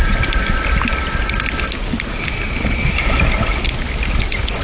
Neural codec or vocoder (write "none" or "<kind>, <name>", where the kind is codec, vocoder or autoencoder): none